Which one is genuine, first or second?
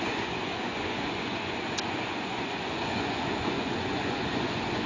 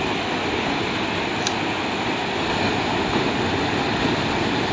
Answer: second